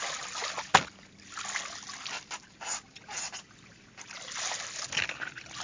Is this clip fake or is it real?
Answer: real